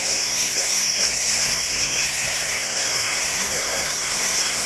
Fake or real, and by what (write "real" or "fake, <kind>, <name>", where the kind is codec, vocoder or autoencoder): fake, codec, SNAC